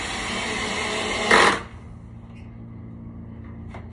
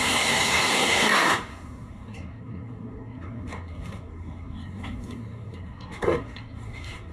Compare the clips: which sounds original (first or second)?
first